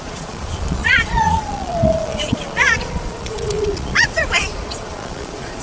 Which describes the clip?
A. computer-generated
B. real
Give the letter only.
A